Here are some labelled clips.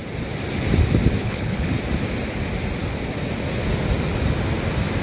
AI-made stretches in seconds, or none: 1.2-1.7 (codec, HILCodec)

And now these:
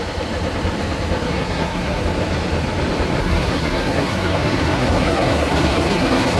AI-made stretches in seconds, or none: 1.2-2.0 (codec, SNAC); 3.2-6.4